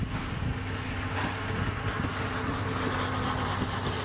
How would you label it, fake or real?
real